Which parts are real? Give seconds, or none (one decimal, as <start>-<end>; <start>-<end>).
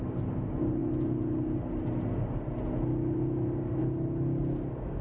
0.0-5.0